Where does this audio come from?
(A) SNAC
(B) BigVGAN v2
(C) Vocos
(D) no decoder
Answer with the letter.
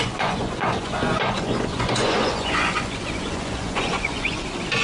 C